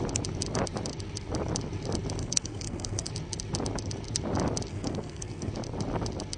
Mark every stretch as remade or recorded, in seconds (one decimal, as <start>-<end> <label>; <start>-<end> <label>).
0.0-2.2 recorded; 2.2-3.1 remade; 3.1-4.7 recorded; 4.7-5.5 remade; 5.5-6.4 recorded